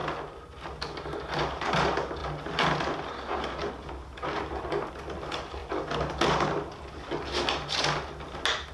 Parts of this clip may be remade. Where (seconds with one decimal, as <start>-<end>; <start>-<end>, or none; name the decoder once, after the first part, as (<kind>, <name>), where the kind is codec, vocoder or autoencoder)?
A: none